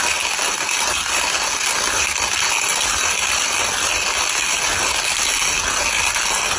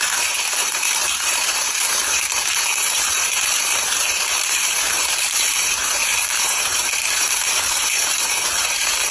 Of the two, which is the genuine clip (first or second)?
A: first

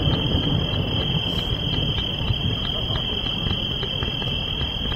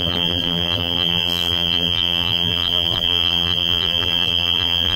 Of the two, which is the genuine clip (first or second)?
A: first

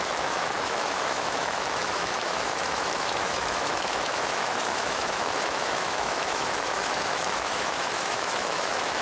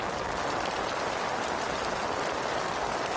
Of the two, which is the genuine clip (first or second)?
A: second